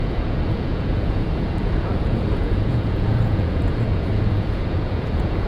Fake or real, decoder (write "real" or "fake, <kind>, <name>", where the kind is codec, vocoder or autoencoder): fake, vocoder, Vocos